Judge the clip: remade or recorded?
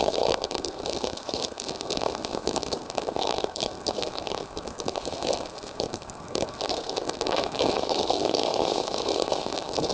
remade